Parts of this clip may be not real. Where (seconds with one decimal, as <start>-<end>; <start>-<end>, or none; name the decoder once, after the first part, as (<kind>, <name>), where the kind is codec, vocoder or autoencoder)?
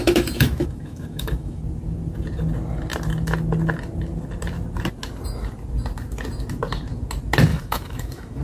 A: 0.0-1.6 (autoencoder, DAC-VAE); 7.5-8.4